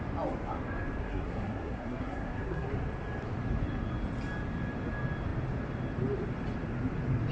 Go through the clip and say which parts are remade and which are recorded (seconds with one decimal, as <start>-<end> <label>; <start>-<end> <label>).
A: 0.0-1.0 recorded; 1.0-2.7 remade; 2.7-7.3 recorded